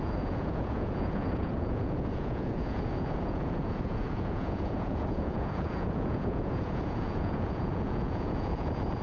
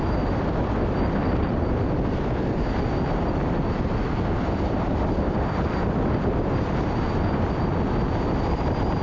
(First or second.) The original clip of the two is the second